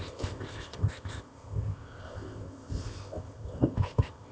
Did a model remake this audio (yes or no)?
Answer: yes